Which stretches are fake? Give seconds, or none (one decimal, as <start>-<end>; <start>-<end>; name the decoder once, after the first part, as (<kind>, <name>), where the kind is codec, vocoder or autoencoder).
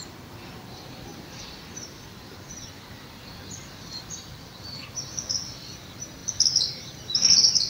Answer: 1.1-5.1 (vocoder, BigVGAN v2)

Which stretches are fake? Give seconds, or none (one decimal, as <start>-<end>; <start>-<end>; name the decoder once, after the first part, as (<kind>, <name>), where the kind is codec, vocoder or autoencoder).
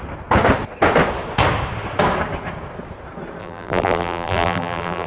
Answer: 3.4-5.1 (vocoder, BigVGAN v2)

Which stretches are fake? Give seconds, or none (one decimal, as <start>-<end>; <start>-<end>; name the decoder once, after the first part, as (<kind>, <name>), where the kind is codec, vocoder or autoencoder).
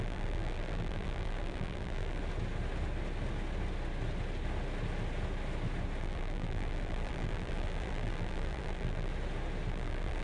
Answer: 0.0-2.2 (vocoder, BigVGAN v2); 6.0-9.1; 9.7-10.2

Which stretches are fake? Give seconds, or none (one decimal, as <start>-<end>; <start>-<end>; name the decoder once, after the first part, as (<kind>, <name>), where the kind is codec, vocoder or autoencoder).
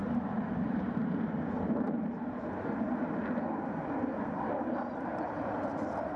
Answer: 0.0-2.0 (vocoder, BigVGAN v2); 5.1-5.8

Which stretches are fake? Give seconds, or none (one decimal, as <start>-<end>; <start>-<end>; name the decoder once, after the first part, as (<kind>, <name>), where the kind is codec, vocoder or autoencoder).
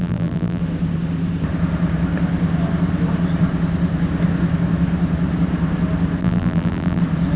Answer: 0.0-0.6 (vocoder, BigVGAN v2); 6.2-7.0